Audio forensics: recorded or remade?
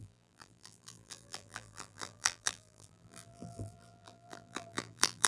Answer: remade